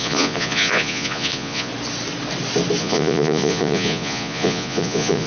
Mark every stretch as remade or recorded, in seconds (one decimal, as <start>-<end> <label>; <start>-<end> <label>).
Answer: 0.0-1.7 remade; 1.7-2.8 recorded; 2.8-5.3 remade